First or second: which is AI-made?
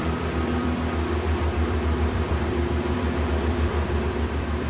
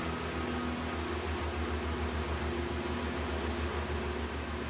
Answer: first